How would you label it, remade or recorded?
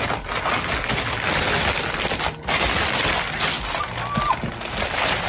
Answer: recorded